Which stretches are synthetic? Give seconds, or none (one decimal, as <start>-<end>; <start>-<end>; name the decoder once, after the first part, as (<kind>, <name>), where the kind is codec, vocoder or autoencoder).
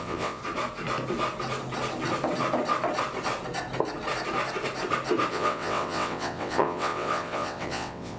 0.0-0.4 (vocoder, WaveNeXt); 5.3-8.2